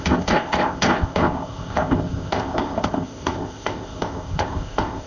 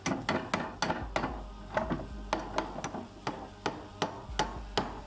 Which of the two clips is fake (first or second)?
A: first